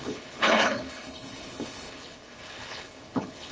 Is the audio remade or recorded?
remade